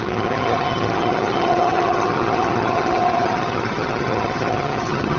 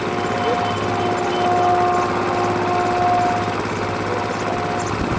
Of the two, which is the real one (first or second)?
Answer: second